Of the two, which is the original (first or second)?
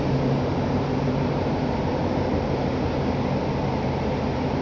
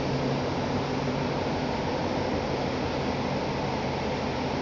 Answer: second